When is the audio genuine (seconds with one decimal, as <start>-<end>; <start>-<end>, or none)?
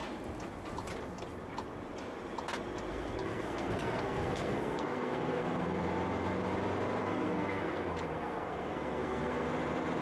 0.0-2.9; 5.8-7.0; 9.5-10.0